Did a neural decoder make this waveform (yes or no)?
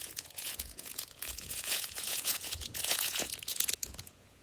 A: yes